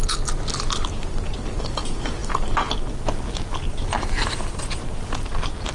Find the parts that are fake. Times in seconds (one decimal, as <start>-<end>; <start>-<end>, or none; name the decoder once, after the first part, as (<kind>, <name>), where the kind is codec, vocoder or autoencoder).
none